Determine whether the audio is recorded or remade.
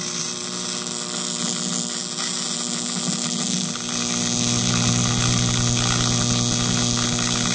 recorded